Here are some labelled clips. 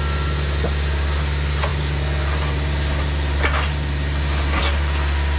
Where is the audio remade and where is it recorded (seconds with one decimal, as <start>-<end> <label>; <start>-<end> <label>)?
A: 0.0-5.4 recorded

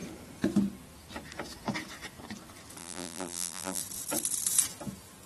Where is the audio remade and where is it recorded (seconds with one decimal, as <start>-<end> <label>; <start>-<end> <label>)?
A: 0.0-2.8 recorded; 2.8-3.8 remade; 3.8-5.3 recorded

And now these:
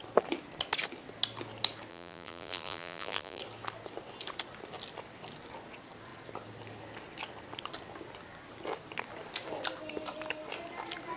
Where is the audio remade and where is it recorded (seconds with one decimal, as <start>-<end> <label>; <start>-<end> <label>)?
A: 0.0-1.9 recorded; 1.9-3.4 remade; 3.4-11.2 recorded

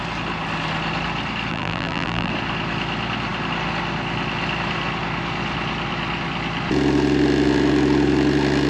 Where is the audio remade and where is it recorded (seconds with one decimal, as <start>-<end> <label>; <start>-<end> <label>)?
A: 0.0-1.5 recorded; 1.5-2.3 remade; 2.3-8.7 recorded

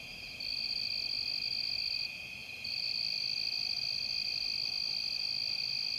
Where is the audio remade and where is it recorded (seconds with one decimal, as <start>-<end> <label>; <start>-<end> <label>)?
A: 0.0-2.4 recorded; 2.4-3.2 remade; 3.2-6.0 recorded

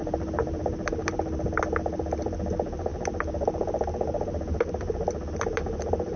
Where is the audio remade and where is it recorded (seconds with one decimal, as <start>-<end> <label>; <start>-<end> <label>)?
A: 0.0-0.6 remade; 0.6-6.2 recorded